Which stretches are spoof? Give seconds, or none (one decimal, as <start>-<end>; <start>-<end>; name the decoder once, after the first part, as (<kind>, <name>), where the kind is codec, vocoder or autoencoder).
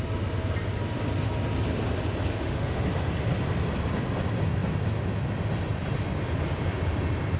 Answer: 2.3-2.8 (autoencoder, DAC-VAE)